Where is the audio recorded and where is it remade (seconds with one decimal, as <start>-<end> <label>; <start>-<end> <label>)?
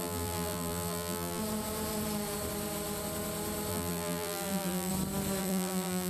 0.0-1.4 remade; 1.4-3.7 recorded; 3.7-4.9 remade; 4.9-5.4 recorded; 5.4-6.1 remade